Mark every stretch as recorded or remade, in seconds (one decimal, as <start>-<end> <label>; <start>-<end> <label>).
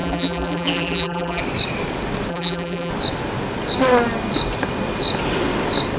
0.0-1.4 remade; 1.4-2.3 recorded; 2.3-2.9 remade; 2.9-6.0 recorded